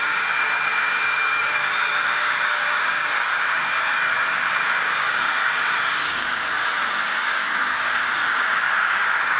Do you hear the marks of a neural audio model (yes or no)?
yes